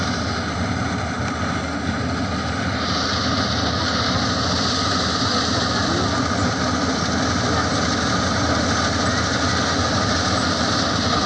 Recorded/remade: recorded